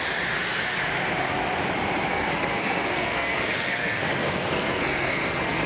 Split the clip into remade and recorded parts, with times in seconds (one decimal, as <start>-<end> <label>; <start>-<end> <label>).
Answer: 0.0-2.1 recorded; 2.1-5.7 remade